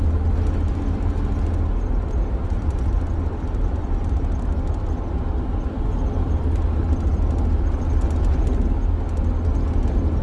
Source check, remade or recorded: recorded